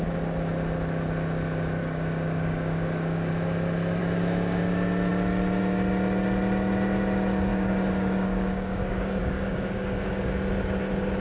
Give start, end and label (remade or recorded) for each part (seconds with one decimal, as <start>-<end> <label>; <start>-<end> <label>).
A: 0.0-1.8 recorded; 1.8-3.3 remade; 3.3-4.0 recorded; 4.0-4.6 remade; 4.6-7.5 recorded; 7.5-10.3 remade; 10.3-11.2 recorded